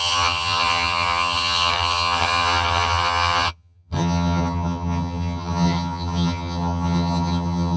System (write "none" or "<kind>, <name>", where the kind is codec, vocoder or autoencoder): vocoder, HiFi-GAN